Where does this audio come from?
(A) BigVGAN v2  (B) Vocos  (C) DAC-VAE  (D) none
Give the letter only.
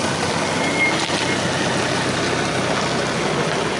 D